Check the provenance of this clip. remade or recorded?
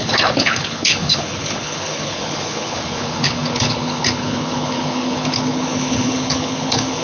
remade